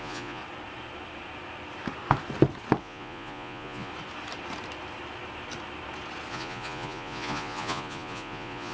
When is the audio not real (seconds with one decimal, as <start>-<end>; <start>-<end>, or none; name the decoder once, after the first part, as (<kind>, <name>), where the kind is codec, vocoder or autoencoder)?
0.0-0.4 (vocoder, Vocos); 2.8-3.9; 6.3-8.7